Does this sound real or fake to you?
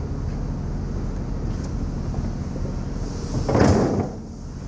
real